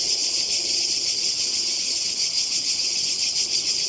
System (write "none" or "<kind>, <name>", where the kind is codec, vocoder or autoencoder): vocoder, HiFi-GAN